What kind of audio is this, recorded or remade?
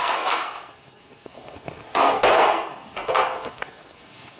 remade